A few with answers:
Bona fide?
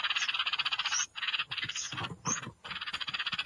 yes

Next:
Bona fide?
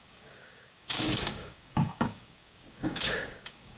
no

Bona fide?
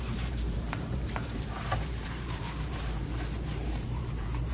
no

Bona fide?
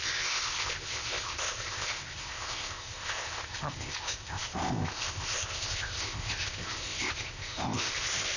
no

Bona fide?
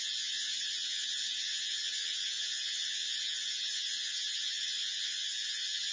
no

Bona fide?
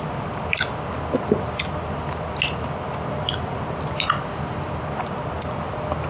yes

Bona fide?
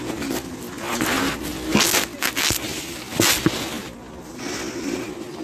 yes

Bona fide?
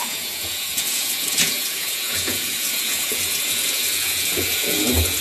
no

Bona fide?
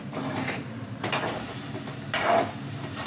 no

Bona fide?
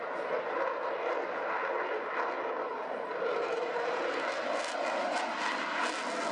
yes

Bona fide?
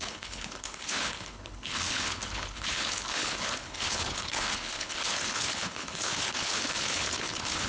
no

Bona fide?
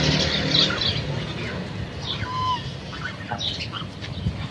yes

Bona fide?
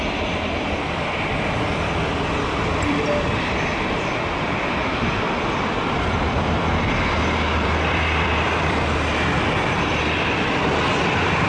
no